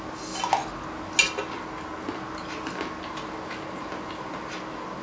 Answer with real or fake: real